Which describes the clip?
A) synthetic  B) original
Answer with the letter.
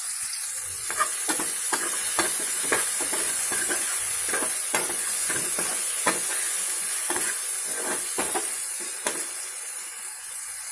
A